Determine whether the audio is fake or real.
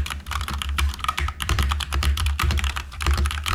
fake